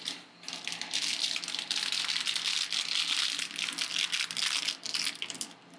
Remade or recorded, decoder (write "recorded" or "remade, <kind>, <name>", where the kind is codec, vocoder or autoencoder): recorded